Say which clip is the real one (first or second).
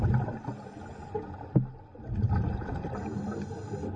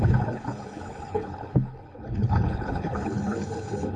first